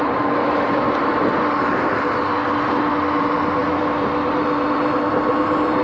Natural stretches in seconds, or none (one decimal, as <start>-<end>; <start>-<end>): 2.4-3.2